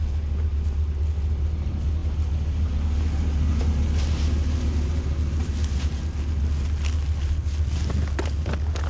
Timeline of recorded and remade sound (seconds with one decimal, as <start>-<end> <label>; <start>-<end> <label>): 0.0-8.9 recorded